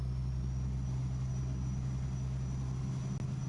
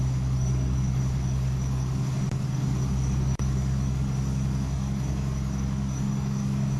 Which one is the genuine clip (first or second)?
first